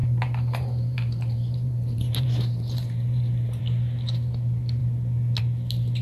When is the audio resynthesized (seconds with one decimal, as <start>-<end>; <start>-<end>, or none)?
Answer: 0.0-3.6